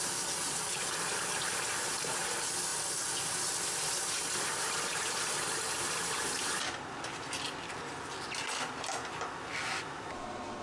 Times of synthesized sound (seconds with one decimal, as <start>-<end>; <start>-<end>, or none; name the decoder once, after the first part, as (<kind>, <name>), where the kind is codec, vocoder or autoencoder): none